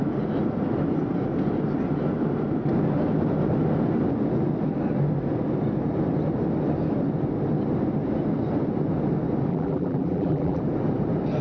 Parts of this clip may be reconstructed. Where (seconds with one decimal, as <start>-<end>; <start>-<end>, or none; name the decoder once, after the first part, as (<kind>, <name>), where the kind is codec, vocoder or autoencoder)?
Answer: 9.5-10.6 (vocoder, BigVGAN v2)